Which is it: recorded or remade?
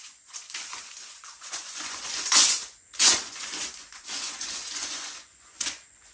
remade